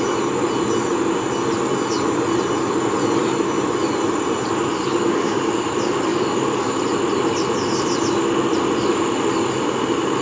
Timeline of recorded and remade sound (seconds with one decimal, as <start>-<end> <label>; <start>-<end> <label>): 0.0-4.9 recorded; 4.9-5.5 remade; 5.5-6.1 recorded; 6.1-6.8 remade; 6.8-10.2 recorded